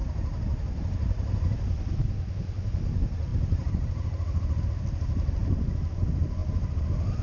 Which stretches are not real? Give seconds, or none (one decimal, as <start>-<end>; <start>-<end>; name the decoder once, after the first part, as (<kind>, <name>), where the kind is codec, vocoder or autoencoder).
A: 3.3-4.6 (vocoder, BigVGAN v2); 5.4-5.9; 6.4-7.2